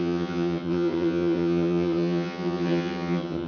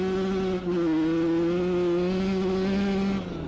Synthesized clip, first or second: first